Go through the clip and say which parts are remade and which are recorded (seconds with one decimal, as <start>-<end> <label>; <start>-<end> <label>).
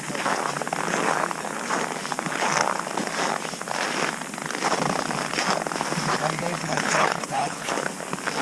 0.0-6.6 recorded; 6.6-7.7 remade; 7.7-8.4 recorded